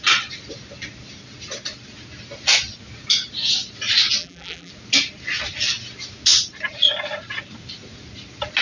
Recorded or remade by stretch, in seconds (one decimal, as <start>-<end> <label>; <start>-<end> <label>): 0.0-4.2 recorded; 4.2-4.7 remade; 4.7-8.6 recorded